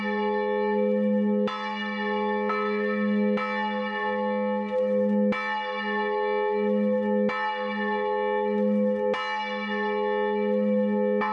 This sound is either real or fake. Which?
real